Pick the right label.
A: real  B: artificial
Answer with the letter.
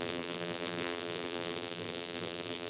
B